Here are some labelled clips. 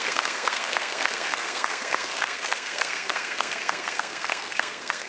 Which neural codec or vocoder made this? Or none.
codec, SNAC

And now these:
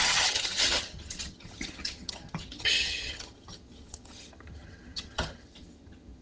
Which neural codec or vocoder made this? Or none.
vocoder, HiFi-GAN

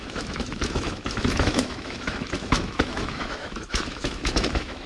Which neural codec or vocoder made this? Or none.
autoencoder, DAC-VAE